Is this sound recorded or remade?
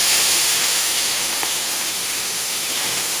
remade